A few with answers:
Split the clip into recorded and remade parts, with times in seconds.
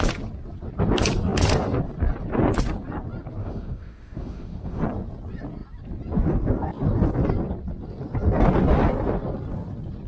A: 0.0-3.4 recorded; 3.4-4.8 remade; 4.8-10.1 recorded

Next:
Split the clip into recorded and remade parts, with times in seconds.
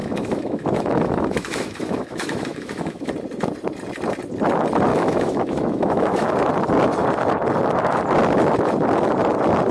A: 0.0-3.1 remade; 3.1-4.9 recorded; 4.9-6.3 remade; 6.3-9.7 recorded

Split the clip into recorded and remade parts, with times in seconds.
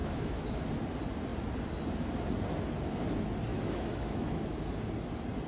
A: 0.0-0.6 remade; 0.6-3.5 recorded; 3.5-4.7 remade; 4.7-5.5 recorded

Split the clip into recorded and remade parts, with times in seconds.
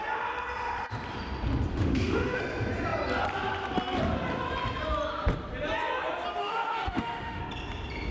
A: 0.0-1.7 recorded; 1.7-2.4 remade; 2.4-6.4 recorded; 6.4-7.4 remade; 7.4-8.1 recorded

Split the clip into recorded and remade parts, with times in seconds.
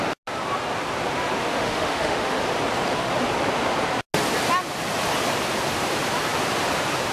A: 0.0-1.4 recorded; 1.4-2.4 remade; 2.4-7.1 recorded